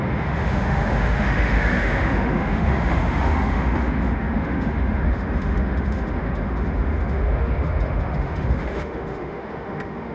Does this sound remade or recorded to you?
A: remade